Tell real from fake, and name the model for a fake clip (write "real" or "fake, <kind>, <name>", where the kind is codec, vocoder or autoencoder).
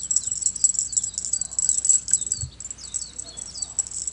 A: real